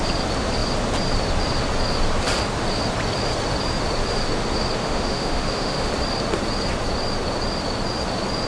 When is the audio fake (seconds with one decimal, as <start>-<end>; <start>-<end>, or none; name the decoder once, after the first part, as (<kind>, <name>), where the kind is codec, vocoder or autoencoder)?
4.8-5.9 (autoencoder, DAC-VAE)